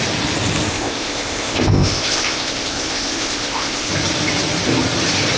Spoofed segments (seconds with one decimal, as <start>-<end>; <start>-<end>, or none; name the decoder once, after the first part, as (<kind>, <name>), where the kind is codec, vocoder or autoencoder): 0.7-3.9 (codec, ZipCodec)